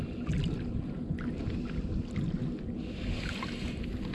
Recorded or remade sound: recorded